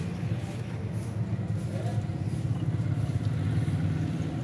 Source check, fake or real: real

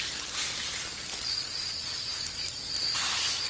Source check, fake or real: real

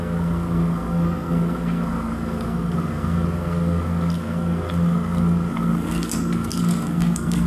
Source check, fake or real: fake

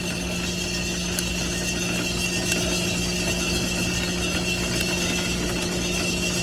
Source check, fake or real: real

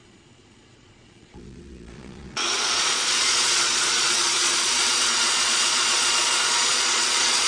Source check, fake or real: fake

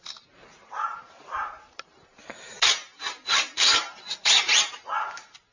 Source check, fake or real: fake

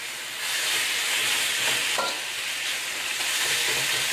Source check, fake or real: real